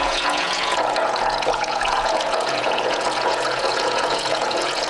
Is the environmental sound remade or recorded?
remade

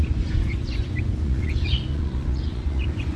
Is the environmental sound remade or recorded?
remade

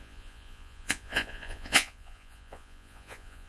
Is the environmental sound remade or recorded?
remade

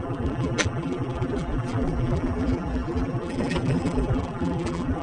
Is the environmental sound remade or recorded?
remade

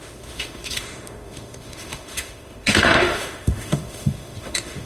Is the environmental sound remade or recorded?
remade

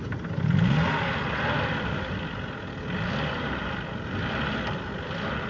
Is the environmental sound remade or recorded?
recorded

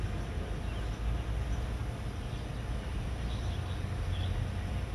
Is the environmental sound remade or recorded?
recorded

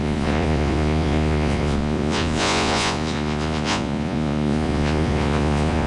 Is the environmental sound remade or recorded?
remade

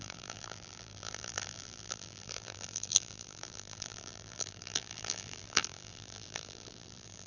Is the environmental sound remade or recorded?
remade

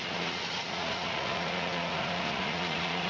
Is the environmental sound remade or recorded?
remade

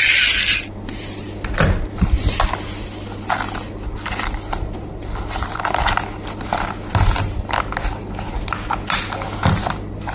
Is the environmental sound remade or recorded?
recorded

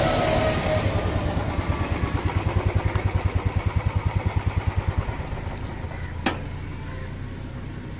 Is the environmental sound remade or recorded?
recorded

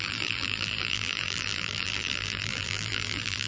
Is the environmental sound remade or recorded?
remade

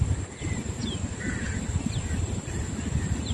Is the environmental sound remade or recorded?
recorded